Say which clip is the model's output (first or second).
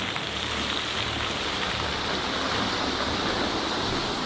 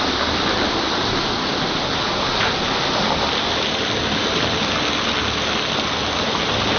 first